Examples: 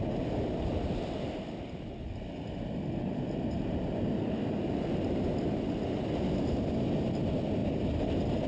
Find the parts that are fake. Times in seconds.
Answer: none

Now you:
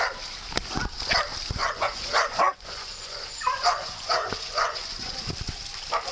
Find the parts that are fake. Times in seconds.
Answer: 1.6-5.3

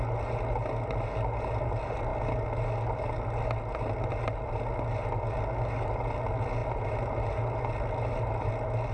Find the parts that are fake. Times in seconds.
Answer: none

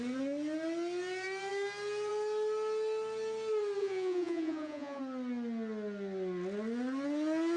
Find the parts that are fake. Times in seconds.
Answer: 3.8-5.0

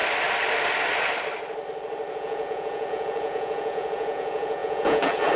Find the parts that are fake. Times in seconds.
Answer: 2.1-5.4

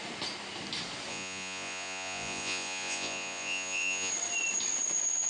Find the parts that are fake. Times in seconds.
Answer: 1.1-4.1

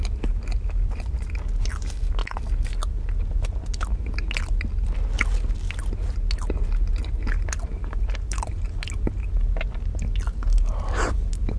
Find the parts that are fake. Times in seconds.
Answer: none

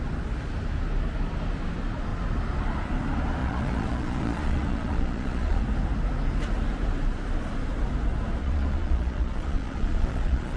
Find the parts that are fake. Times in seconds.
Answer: 3.4-5.6; 8.4-10.6